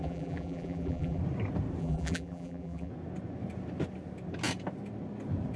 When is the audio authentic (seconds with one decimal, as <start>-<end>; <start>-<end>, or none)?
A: 1.2-1.8; 2.9-5.6